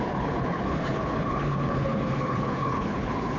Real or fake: fake